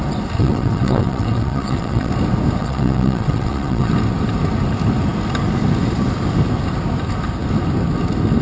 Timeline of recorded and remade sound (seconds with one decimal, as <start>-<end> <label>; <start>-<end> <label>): 0.0-0.4 recorded; 0.4-2.1 remade; 2.1-2.6 recorded; 2.6-3.9 remade; 3.9-8.4 recorded